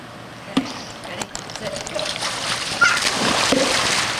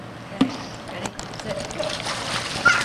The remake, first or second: first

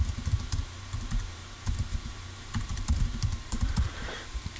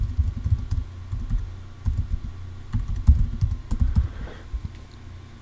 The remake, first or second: first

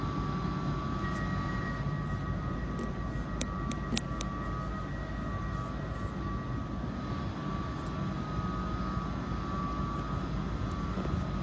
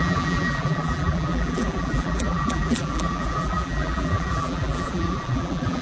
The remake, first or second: second